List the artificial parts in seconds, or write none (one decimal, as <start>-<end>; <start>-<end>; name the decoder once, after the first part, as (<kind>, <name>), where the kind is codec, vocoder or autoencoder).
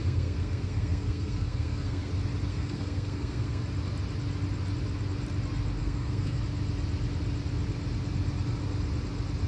0.0-2.1 (codec, SNAC); 2.5-3.6; 5.8-6.4